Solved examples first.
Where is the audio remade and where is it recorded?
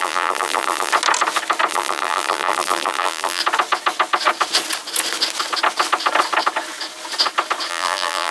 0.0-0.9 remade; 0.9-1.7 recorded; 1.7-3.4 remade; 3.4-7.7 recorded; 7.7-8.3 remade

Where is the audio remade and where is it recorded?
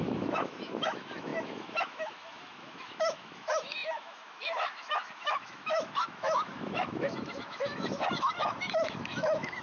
0.0-9.6 remade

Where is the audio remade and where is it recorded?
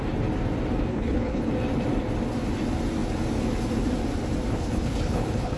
0.0-0.9 recorded; 0.9-1.5 remade; 1.5-4.5 recorded; 4.5-5.6 remade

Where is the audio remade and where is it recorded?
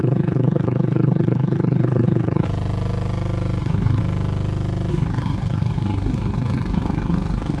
0.0-2.4 remade; 2.4-3.6 recorded; 3.6-4.0 remade; 4.0-4.9 recorded; 4.9-7.6 remade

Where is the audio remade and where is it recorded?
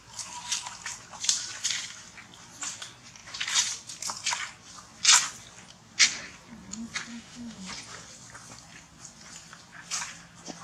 0.0-7.1 recorded; 7.1-7.7 remade; 7.7-10.6 recorded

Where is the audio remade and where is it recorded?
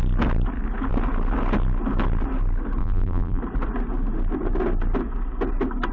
0.0-2.8 recorded; 2.8-3.4 remade; 3.4-5.9 recorded